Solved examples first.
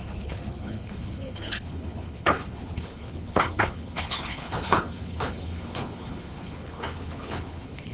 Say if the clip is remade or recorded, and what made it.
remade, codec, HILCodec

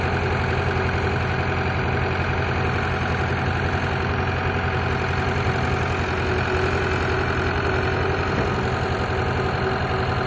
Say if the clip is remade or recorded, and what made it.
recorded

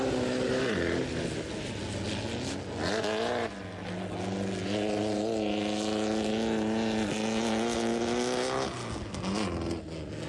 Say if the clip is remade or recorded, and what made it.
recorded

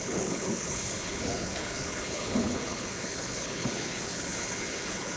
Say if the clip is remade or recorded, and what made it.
remade, codec, HILCodec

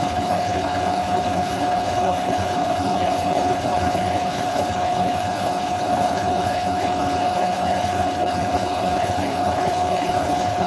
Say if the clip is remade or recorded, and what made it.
remade, codec, HILCodec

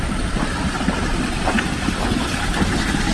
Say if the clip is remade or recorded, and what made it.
recorded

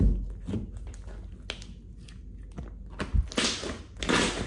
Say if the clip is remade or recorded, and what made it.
recorded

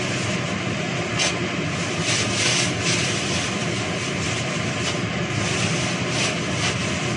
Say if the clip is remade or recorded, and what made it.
recorded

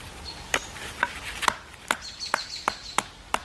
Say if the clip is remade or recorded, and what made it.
recorded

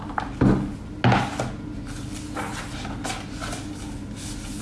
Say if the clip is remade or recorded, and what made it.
recorded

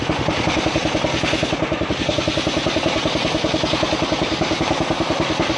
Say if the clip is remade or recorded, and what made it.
recorded